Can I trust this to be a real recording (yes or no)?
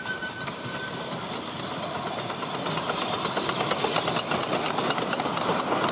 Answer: yes